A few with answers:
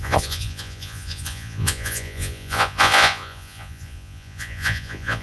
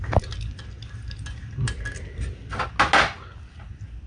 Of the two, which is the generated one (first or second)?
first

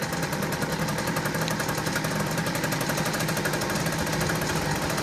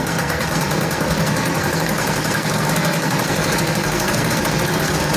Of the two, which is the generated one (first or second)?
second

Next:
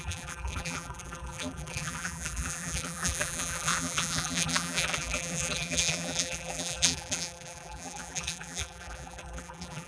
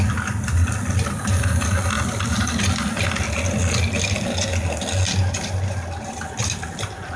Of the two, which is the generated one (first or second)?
first